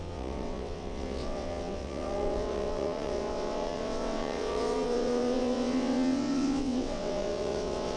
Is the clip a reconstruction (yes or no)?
yes